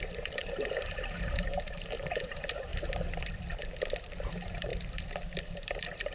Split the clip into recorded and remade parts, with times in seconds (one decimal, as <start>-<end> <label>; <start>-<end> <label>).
0.0-2.7 remade; 2.7-4.3 recorded; 4.3-4.7 remade; 4.7-5.4 recorded; 5.4-6.1 remade